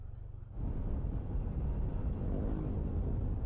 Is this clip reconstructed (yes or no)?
no